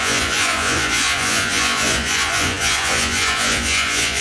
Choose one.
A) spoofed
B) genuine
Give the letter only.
A